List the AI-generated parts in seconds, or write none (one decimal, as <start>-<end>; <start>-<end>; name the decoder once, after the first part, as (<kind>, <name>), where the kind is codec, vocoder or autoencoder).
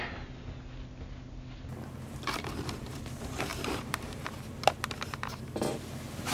3.5-4.2 (vocoder, BigVGAN v2)